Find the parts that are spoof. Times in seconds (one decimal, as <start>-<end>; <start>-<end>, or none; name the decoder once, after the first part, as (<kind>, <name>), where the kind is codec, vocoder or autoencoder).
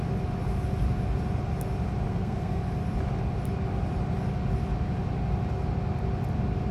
2.1-2.6 (codec, SNAC)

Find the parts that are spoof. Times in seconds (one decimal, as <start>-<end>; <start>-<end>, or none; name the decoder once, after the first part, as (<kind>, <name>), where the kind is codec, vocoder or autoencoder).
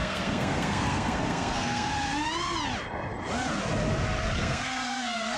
0.0-1.9 (codec, SNAC); 4.4-5.4